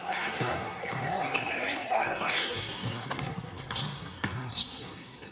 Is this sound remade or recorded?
remade